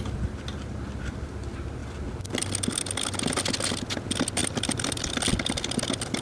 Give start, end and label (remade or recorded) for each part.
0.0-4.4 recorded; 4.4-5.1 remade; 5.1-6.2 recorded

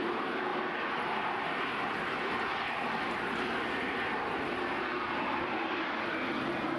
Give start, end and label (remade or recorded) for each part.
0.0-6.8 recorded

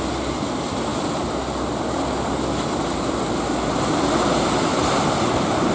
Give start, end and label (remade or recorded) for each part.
0.0-5.7 recorded

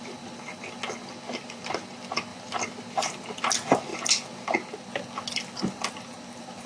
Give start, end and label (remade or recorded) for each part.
0.0-2.3 recorded; 2.3-3.4 remade; 3.4-6.7 recorded